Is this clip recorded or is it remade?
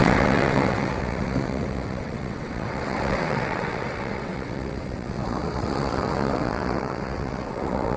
remade